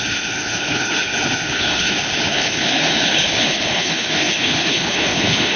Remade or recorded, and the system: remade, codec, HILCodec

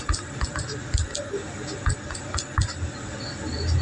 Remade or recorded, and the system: recorded